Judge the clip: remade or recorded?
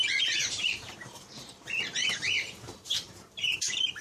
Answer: remade